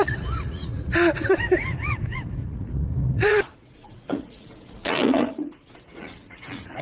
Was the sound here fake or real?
fake